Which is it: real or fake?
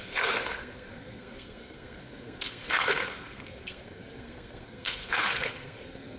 fake